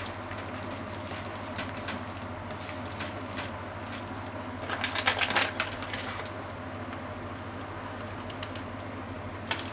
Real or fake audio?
real